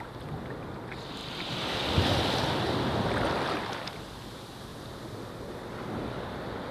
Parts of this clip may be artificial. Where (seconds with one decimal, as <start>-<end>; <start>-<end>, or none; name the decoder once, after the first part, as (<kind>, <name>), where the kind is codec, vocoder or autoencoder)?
none